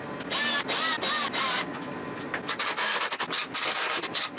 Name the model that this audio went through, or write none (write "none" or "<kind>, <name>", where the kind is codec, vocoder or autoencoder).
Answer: none